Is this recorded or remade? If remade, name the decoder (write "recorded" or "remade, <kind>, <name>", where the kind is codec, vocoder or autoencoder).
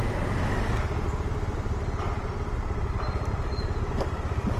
recorded